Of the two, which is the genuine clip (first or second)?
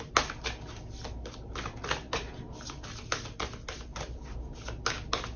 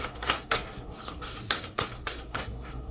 first